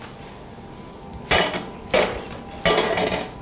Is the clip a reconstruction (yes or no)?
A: no